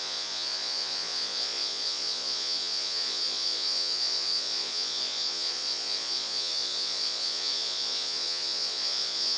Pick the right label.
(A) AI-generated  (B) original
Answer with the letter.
A